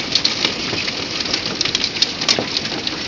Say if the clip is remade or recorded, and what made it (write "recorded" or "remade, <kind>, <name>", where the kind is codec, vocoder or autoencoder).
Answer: recorded